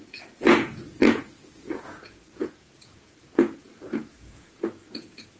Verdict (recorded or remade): remade